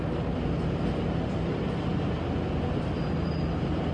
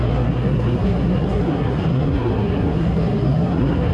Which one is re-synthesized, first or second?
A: second